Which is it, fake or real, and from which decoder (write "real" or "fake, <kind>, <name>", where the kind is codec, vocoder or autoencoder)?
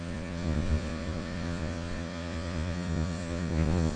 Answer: fake, vocoder, Vocos